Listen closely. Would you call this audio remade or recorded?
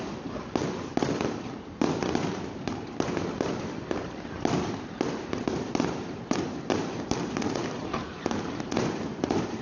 remade